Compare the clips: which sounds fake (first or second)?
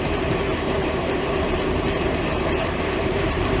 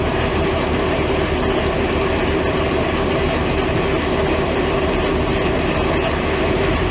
first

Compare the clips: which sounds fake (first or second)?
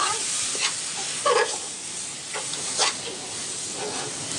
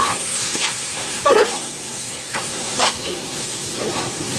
second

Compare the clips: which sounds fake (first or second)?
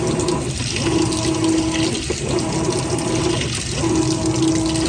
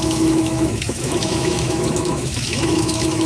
second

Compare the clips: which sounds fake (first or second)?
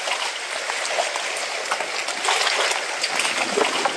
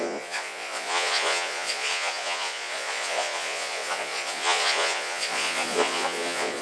second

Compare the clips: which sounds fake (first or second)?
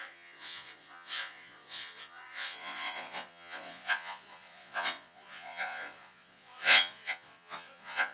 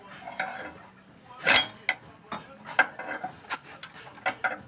first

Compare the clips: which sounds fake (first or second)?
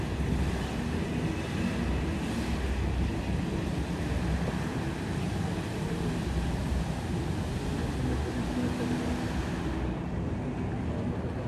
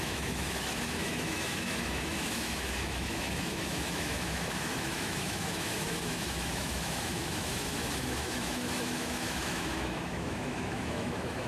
second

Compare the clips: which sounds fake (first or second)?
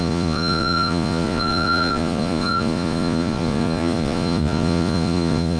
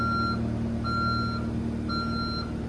first